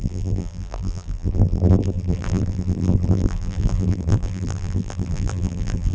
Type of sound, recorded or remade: remade